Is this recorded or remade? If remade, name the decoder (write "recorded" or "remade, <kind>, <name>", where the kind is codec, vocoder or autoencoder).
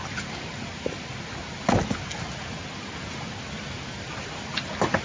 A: recorded